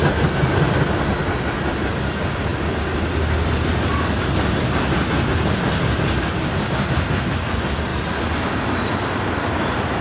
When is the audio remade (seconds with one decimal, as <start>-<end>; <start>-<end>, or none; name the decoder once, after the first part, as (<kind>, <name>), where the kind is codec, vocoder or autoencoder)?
none